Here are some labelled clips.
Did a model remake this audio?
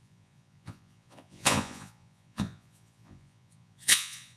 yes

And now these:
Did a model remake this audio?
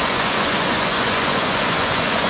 yes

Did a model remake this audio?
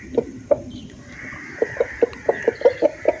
no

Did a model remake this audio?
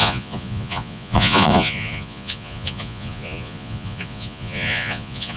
yes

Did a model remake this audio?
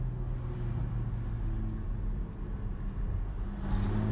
no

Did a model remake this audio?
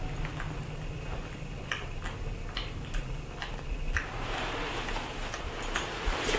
no